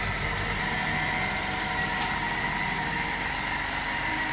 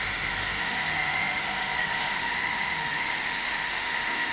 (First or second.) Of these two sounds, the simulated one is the second